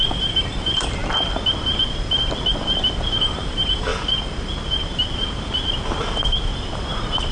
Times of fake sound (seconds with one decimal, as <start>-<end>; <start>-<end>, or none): 0.0-1.0; 3.2-3.9